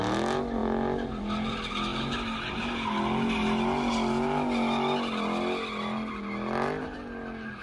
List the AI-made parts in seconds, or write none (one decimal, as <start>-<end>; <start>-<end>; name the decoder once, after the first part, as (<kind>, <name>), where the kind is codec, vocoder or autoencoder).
none